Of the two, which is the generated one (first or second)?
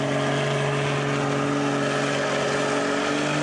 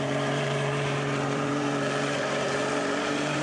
second